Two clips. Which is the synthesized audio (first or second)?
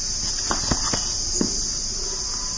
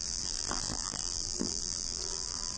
second